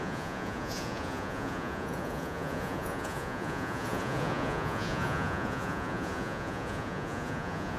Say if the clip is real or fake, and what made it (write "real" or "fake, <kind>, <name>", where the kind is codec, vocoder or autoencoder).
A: fake, vocoder, Vocos